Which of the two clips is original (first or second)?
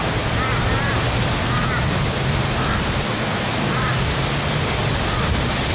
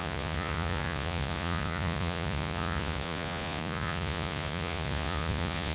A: first